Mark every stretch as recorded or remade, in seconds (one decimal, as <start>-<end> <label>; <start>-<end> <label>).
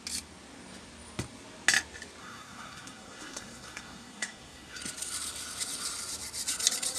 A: 0.0-2.2 recorded; 2.2-4.8 remade; 4.8-7.0 recorded